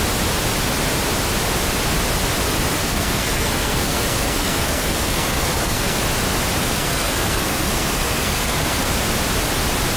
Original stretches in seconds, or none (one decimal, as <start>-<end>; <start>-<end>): 0.0-2.8; 6.0-6.6; 8.9-10.0